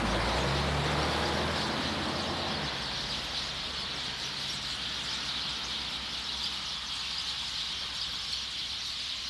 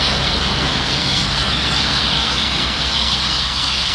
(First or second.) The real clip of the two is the first